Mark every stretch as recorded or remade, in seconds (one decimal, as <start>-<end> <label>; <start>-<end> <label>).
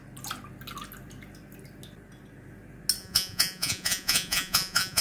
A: 0.0-3.0 recorded; 3.0-5.0 remade